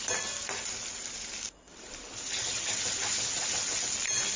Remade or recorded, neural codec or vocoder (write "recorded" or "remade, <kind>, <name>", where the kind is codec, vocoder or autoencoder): recorded